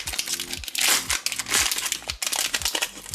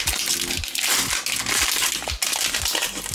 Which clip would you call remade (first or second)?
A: second